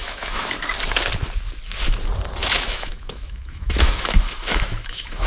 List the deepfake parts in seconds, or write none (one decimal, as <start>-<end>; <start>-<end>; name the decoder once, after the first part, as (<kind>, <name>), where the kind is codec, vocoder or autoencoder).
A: 0.0-0.5 (autoencoder, DAC-VAE); 2.4-5.3